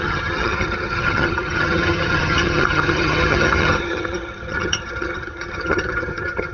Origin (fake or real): fake